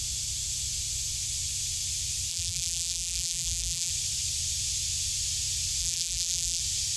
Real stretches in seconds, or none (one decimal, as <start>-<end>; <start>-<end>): 0.0-2.3; 3.9-5.8; 6.6-7.0